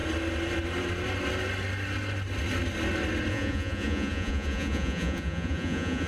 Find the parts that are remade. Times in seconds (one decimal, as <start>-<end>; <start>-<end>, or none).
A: 3.3-6.1